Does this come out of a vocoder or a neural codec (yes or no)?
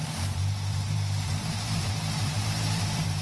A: yes